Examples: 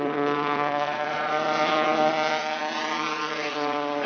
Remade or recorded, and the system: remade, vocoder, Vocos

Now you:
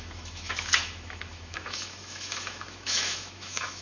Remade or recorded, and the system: remade, autoencoder, DAC-VAE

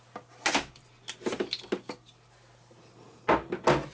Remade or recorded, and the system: recorded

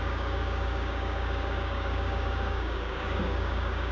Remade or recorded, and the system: remade, codec, DAC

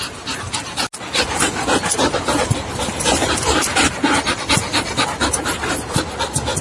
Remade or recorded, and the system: recorded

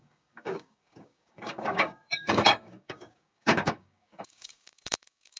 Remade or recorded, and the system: remade, codec, DAC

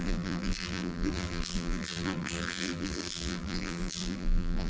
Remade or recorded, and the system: remade, vocoder, BigVGAN v2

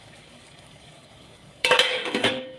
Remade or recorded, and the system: remade, codec, DAC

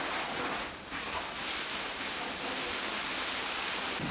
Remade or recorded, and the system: recorded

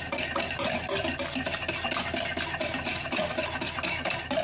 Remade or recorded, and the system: recorded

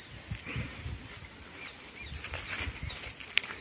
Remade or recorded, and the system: recorded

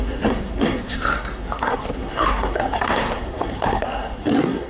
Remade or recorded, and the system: remade, codec, SNAC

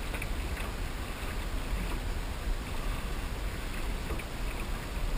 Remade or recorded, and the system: recorded